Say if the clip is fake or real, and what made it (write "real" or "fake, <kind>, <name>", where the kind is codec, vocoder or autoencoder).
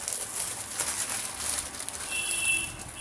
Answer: real